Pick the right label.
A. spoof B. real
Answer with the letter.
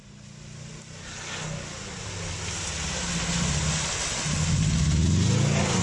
B